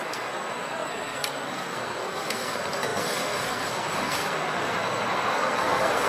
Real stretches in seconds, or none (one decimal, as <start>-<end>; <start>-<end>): none